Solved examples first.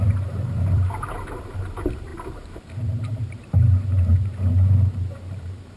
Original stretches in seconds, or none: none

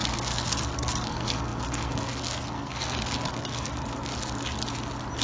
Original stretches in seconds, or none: 4.1-5.2

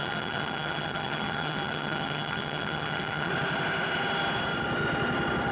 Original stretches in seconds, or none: 3.3-5.5

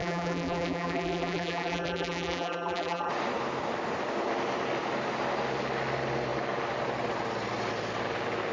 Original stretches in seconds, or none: 3.1-8.5

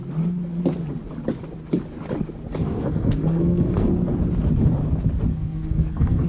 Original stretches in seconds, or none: 0.0-2.6; 3.9-5.3

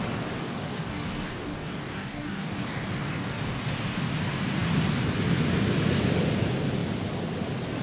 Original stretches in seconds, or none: 0.0-0.4; 3.7-7.8

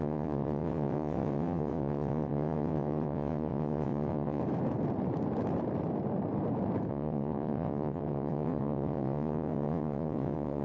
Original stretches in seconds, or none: 4.4-6.9